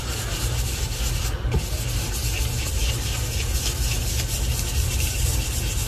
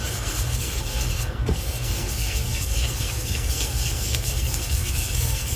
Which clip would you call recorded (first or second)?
first